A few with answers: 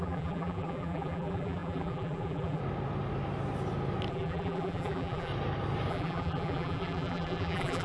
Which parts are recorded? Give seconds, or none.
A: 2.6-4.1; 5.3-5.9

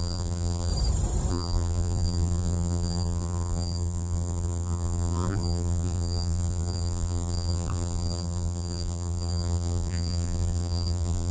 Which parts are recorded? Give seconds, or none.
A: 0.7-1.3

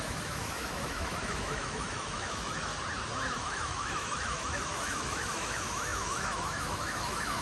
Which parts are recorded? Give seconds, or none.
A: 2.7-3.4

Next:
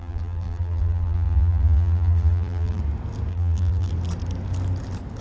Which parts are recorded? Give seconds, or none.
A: 2.8-3.3; 3.9-5.2

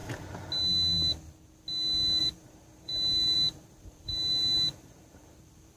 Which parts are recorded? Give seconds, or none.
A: 0.0-2.2

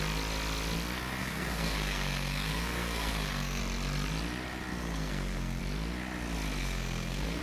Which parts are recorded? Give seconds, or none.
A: 0.0-1.2; 3.6-4.8; 5.6-6.6

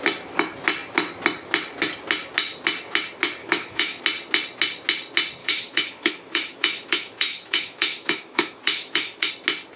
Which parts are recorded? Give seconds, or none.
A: 0.0-3.4; 4.0-5.4; 9.3-9.8